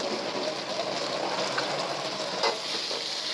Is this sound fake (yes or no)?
no